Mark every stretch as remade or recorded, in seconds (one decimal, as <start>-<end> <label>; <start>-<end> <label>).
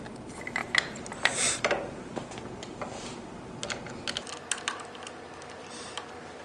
0.0-0.6 recorded; 0.6-2.1 remade; 2.1-5.6 recorded; 5.6-6.4 remade